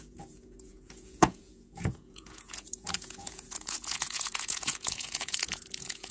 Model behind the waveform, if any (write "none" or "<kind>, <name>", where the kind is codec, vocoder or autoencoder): vocoder, Vocos